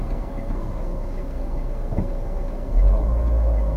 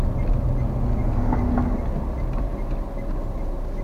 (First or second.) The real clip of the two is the second